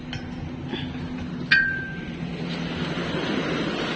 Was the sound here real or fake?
real